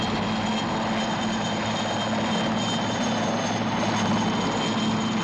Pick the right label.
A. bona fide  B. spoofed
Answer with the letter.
A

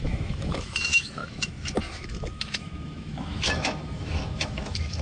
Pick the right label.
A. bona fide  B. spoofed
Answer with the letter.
B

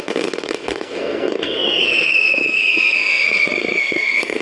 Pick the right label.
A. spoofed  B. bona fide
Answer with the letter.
A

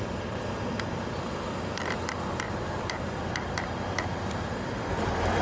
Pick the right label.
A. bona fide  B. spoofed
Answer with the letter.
B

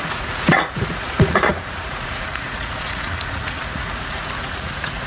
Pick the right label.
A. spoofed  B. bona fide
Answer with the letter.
A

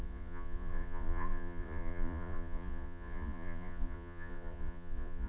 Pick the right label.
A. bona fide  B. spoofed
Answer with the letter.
B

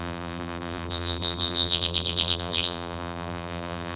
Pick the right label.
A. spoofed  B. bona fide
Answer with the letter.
A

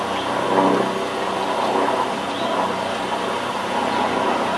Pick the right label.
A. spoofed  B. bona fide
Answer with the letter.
B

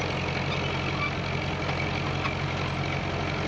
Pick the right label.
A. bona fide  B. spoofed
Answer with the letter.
A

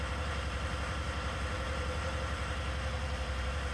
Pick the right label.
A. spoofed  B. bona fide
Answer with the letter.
A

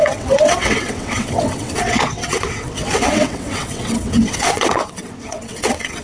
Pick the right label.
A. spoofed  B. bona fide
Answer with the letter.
A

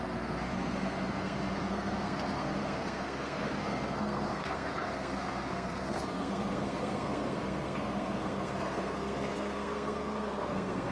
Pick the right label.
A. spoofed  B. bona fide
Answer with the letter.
A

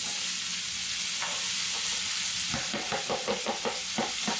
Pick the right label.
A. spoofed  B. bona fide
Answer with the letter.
B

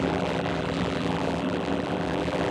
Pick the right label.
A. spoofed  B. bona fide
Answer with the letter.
A